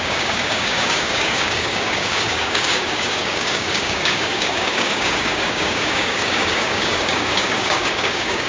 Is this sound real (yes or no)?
no